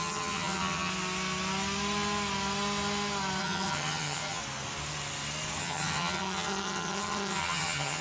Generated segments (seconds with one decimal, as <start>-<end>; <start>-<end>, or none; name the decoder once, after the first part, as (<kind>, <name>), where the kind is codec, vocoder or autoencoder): 0.0-0.9 (vocoder, HiFi-GAN); 3.4-4.4; 5.6-8.0